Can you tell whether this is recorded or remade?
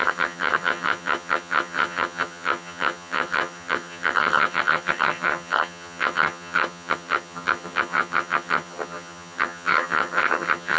remade